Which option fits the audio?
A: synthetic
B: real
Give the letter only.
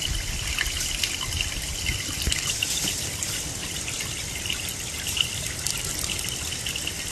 B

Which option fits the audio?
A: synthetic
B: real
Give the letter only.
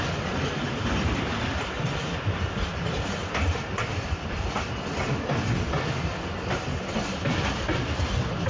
B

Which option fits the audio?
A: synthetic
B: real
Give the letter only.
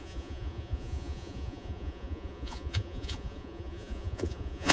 A